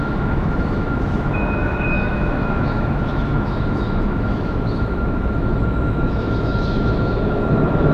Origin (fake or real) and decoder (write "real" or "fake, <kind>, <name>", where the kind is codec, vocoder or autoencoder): fake, autoencoder, DAC-VAE